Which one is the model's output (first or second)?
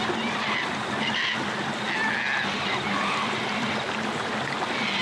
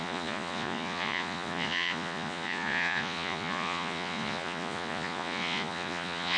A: second